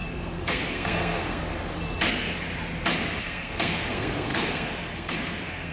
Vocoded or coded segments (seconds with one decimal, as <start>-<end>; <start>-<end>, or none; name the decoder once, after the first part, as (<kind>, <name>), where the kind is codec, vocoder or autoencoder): 0.0-1.5 (codec, SNAC); 2.1-2.5; 3.2-5.7